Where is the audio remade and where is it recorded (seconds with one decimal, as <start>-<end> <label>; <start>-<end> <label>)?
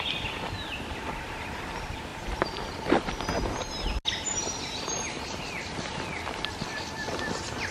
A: 0.0-7.7 recorded